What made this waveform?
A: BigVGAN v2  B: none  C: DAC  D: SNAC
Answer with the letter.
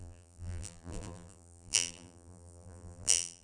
A